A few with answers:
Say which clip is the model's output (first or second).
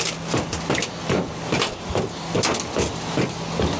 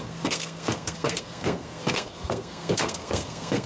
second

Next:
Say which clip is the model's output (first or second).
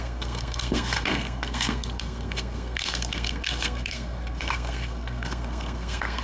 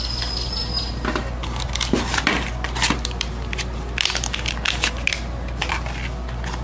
first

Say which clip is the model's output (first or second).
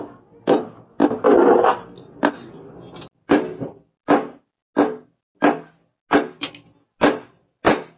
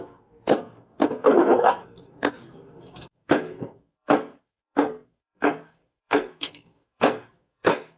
second